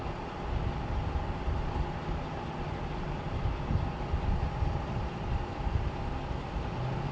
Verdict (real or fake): real